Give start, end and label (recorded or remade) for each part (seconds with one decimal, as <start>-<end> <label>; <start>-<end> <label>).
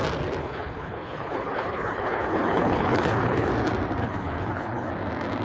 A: 0.0-0.4 recorded; 0.4-3.5 remade; 3.5-4.0 recorded; 4.0-4.9 remade; 4.9-5.4 recorded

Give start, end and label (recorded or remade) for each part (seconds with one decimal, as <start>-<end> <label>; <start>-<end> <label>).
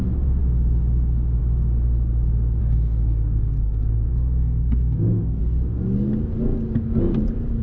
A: 0.0-2.6 recorded; 2.6-5.4 remade; 5.4-7.6 recorded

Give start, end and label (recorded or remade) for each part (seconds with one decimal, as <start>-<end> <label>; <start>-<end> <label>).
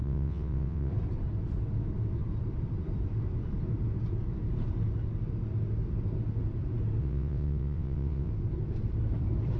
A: 0.0-0.9 remade; 0.9-7.0 recorded; 7.0-8.3 remade; 8.3-9.6 recorded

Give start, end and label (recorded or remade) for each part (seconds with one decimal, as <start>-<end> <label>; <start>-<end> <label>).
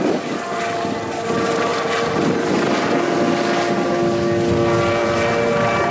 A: 0.0-1.7 recorded; 1.7-2.5 remade; 2.5-5.0 recorded; 5.0-5.5 remade; 5.5-5.9 recorded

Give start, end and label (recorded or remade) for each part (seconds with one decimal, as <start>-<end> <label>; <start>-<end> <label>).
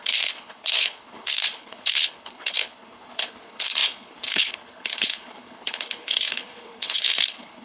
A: 0.0-7.6 remade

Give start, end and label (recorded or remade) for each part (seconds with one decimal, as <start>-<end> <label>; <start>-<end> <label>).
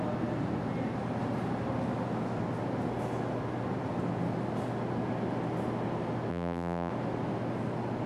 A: 0.0-6.3 recorded; 6.3-6.9 remade; 6.9-8.1 recorded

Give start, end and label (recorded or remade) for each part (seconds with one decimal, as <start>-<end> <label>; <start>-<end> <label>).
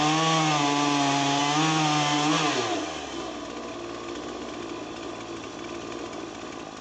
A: 0.0-6.8 recorded